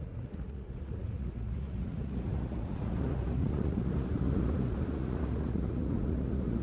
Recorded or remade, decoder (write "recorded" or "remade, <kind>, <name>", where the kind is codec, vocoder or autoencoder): remade, vocoder, Vocos